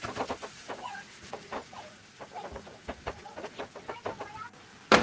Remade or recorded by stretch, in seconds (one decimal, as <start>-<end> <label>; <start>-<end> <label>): 0.0-0.6 recorded; 0.6-3.6 remade; 3.6-5.0 recorded